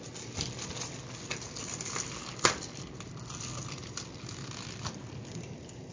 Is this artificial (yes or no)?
no